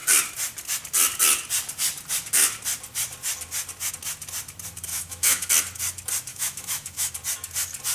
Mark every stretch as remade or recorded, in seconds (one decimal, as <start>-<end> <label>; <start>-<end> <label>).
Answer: 0.0-4.9 recorded; 4.9-5.5 remade; 5.5-6.3 recorded; 6.3-7.1 remade; 7.1-7.9 recorded